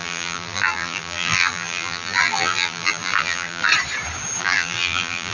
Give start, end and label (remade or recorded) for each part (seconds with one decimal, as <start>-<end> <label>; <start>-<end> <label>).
0.0-3.7 remade; 3.7-4.4 recorded; 4.4-5.3 remade